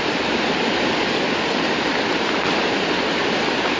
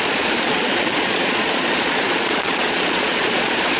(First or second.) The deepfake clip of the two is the second